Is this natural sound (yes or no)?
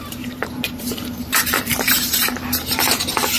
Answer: no